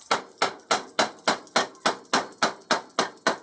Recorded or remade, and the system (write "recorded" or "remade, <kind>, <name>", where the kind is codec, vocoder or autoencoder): recorded